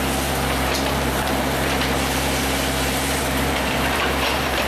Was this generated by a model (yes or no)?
yes